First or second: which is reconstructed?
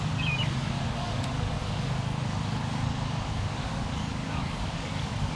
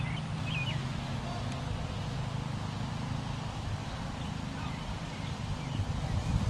first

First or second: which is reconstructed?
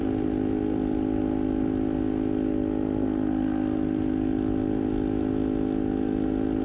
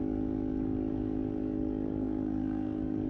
second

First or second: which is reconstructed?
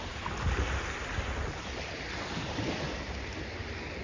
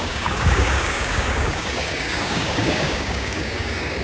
second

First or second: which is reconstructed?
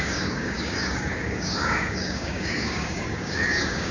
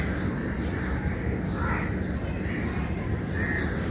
first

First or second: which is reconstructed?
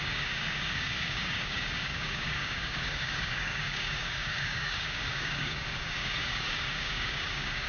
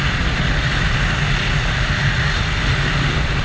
first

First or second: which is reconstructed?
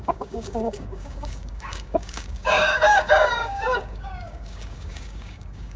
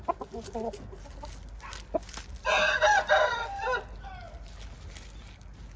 first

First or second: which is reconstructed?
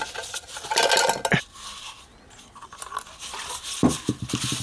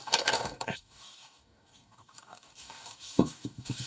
second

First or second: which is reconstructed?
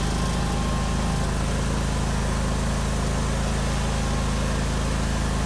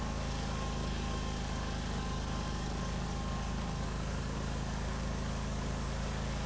second